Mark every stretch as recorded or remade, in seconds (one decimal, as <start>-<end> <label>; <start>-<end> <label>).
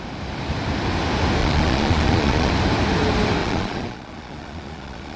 0.0-1.4 recorded; 1.4-2.5 remade; 2.5-3.4 recorded; 3.4-5.2 remade